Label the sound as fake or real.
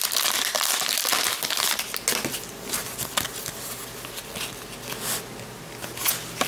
real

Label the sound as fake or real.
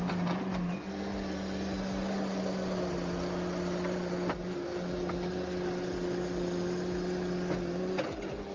real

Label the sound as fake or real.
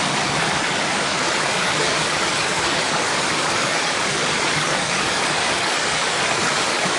fake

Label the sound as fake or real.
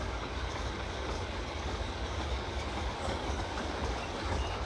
fake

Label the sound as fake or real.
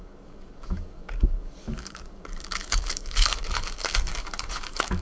fake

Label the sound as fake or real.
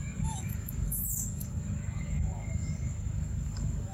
fake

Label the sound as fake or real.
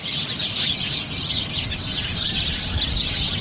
real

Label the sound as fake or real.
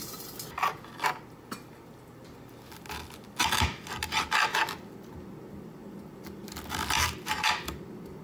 real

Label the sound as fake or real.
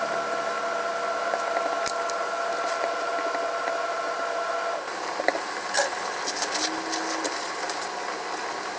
real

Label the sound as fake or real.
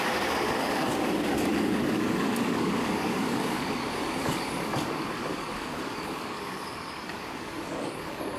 fake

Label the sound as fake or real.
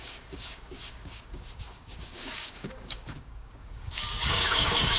fake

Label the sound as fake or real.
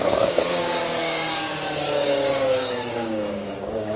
fake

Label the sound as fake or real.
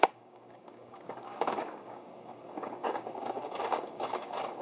fake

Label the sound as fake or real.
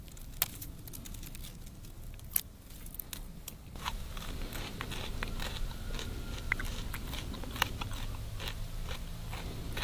real